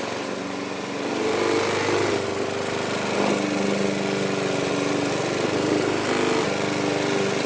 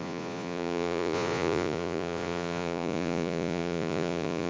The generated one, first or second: second